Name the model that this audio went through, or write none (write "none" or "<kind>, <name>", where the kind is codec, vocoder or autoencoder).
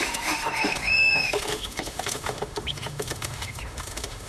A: autoencoder, DAC-VAE